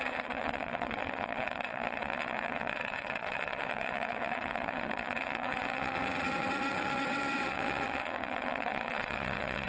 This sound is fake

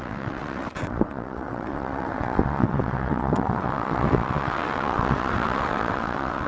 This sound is fake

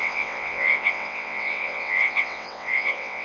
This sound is fake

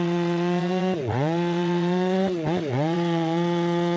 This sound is fake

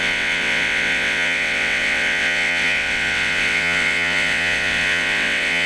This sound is fake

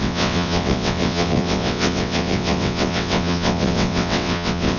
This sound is fake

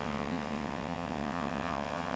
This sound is fake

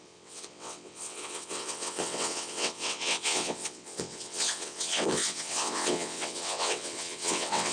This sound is fake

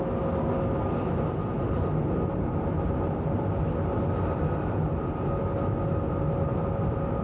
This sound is real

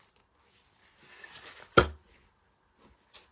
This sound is real